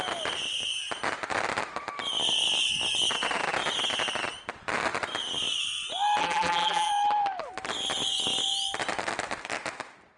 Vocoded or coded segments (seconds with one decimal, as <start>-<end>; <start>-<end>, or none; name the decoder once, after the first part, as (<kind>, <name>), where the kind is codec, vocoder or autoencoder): 6.2-6.9 (vocoder, BigVGAN v2)